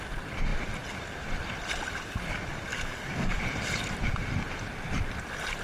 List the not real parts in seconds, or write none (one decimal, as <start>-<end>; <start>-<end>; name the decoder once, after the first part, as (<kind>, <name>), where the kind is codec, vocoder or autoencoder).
2.7-3.4 (codec, DAC)